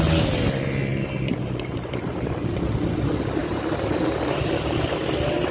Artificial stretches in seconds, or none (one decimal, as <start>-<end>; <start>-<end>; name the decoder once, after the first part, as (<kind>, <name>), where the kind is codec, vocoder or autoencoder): 0.9-2.5 (vocoder, BigVGAN v2); 3.4-4.4